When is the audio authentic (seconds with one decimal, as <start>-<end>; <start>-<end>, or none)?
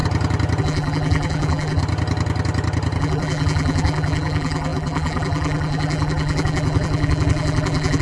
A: 0.0-0.6; 1.8-3.0